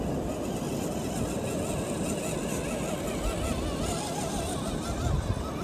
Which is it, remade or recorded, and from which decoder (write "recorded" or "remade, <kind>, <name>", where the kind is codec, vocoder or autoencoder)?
recorded